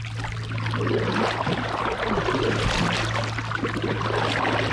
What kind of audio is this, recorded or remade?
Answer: recorded